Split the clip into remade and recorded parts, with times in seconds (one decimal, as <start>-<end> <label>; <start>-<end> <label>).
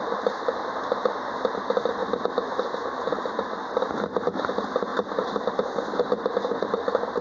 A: 0.0-7.2 recorded